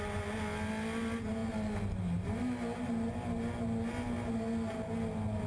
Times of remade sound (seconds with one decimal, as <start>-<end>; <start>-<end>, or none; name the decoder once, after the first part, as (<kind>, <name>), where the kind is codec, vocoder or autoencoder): none